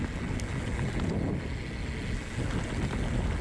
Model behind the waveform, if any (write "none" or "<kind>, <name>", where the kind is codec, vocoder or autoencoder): none